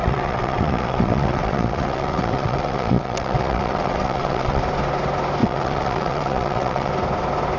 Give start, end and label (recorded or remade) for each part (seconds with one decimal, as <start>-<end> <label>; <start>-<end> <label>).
0.0-4.6 remade; 4.6-5.4 recorded; 5.4-6.9 remade; 6.9-7.6 recorded